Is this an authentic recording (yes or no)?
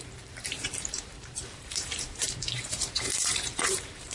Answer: no